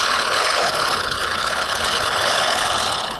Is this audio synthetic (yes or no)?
yes